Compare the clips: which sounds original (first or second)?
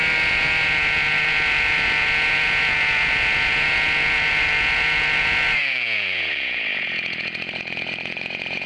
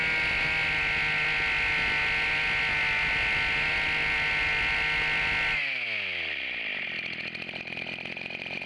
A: second